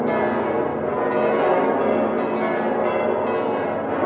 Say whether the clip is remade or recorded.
recorded